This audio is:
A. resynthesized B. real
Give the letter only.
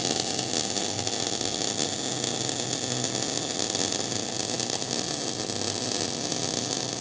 B